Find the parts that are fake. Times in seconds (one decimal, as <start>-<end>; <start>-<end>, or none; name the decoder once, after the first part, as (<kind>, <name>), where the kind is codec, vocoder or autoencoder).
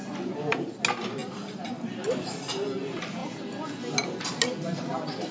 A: none